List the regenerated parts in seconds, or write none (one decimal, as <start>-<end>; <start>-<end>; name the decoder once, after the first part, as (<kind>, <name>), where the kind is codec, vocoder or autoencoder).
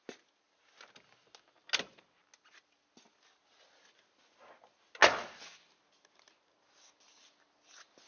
none